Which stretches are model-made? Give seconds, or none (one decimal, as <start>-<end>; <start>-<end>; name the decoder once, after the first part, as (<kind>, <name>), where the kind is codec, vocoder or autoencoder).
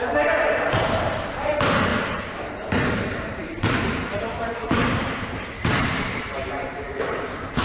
0.0-1.9 (vocoder, BigVGAN v2); 2.9-7.6